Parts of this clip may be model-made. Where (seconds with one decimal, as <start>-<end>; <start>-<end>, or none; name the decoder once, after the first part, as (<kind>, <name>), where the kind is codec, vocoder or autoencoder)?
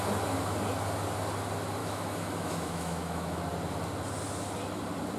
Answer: 1.8-3.4 (autoencoder, DAC-VAE)